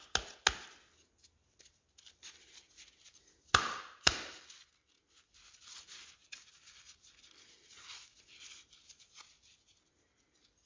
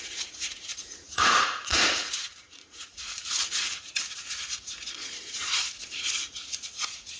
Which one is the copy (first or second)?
second